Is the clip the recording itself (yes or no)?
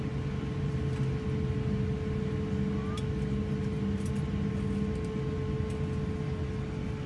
yes